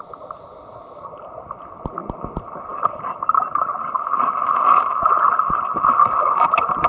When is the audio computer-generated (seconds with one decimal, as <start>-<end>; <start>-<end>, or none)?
none